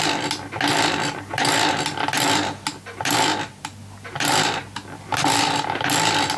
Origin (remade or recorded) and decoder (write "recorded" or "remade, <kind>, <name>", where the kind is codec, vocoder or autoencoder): recorded